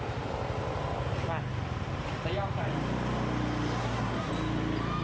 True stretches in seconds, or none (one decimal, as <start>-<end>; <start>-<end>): 0.0-3.8; 4.3-5.0